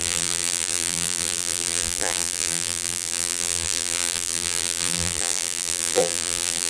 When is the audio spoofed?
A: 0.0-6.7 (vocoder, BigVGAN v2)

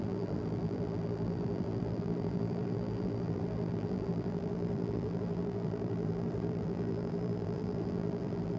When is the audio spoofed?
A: 0.0-8.6 (vocoder, BigVGAN v2)

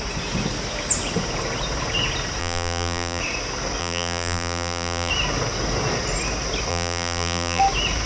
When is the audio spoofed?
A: 2.4-3.2 (vocoder, BigVGAN v2); 3.8-5.1; 6.7-7.6

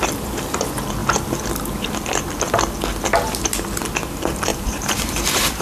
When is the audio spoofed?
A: 1.0-1.9 (vocoder, BigVGAN v2); 4.5-5.6